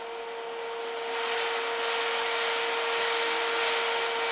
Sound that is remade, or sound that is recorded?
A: recorded